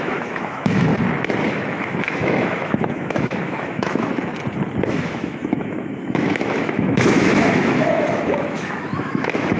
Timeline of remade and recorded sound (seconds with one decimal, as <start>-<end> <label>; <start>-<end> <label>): 0.0-0.9 remade; 0.9-1.5 recorded; 1.5-4.3 remade; 4.3-4.9 recorded; 4.9-9.6 remade